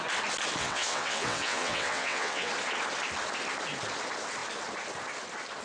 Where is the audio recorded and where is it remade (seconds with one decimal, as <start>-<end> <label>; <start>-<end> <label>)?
0.0-0.6 recorded; 0.6-2.5 remade; 2.5-5.6 recorded